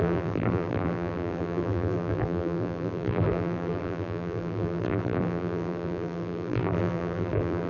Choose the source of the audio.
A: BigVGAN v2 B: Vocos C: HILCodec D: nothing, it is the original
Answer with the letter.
A